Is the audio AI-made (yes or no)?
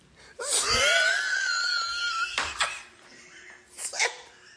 no